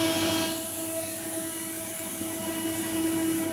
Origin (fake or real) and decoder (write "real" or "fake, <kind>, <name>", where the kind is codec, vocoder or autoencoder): fake, codec, DAC